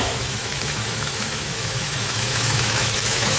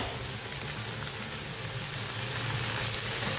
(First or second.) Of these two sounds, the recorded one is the second